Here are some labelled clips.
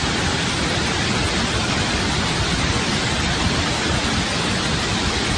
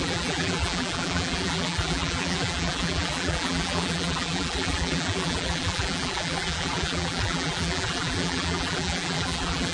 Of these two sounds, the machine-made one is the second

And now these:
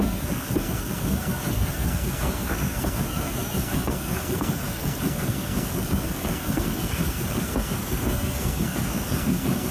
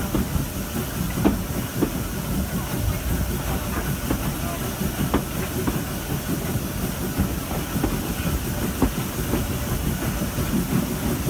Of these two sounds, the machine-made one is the first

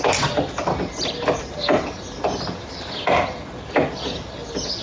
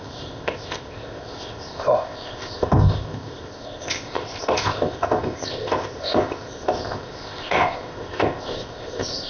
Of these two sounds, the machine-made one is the second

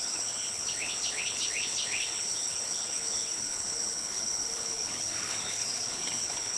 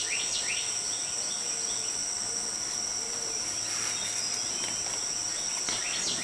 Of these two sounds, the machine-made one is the first